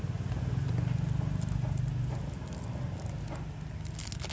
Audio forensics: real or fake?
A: real